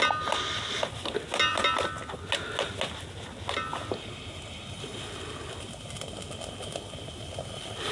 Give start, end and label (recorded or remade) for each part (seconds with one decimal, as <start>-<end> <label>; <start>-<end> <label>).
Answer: 0.0-7.9 recorded